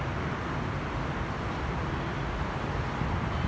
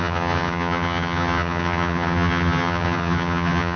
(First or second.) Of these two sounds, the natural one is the first